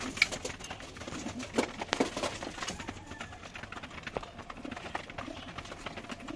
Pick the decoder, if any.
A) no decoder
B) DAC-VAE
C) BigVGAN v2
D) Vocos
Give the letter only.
A